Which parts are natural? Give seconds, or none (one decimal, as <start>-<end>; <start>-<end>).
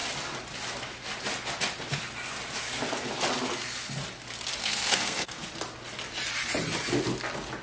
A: 0.0-4.6; 5.5-7.6